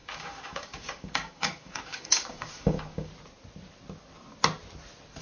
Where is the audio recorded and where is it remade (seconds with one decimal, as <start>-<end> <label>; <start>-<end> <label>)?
0.0-3.1 remade; 3.1-5.2 recorded